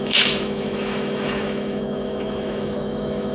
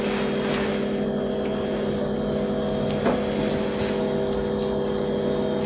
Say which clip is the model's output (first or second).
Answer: first